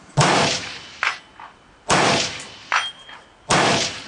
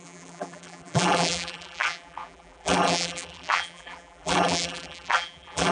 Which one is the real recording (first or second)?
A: first